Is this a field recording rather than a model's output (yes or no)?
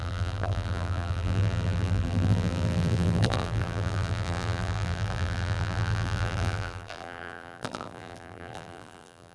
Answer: no